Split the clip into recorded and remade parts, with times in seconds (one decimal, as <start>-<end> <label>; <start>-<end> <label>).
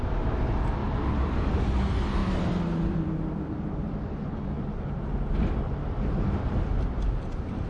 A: 0.0-0.8 recorded; 0.8-1.6 remade; 1.6-2.2 recorded; 2.2-4.7 remade; 4.7-7.7 recorded